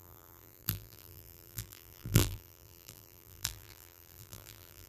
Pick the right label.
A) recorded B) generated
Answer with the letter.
B